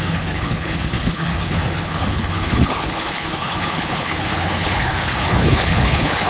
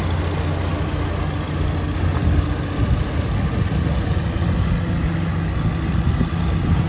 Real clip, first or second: second